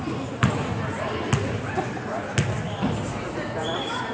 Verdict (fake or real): real